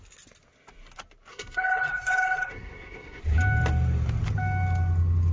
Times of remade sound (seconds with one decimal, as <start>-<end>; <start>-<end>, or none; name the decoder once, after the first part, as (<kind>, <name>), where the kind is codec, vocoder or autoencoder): 1.3-3.2 (codec, SNAC)

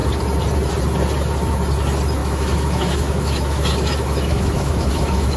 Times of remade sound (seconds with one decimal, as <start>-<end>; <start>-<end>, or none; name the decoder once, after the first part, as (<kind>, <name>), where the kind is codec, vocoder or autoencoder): 2.2-5.4 (autoencoder, DAC-VAE)

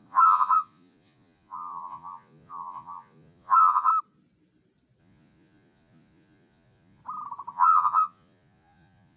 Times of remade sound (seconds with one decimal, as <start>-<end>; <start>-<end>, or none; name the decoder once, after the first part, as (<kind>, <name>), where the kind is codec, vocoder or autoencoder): 0.0-3.9 (vocoder, Vocos); 5.0-7.0; 7.5-9.2